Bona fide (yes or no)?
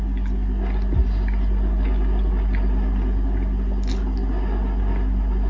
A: yes